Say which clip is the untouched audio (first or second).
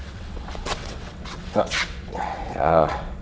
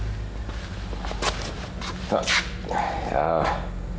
second